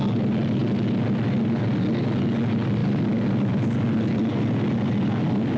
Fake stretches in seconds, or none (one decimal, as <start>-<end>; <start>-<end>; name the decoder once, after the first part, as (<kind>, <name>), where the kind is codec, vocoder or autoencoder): none